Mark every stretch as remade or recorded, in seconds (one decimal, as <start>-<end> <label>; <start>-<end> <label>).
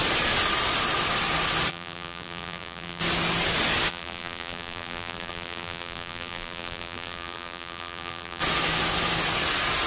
0.0-1.7 recorded; 1.7-3.0 remade; 3.0-3.9 recorded; 3.9-8.4 remade; 8.4-9.9 recorded